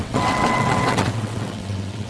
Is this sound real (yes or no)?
no